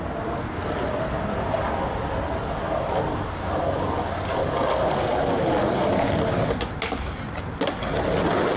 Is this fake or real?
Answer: real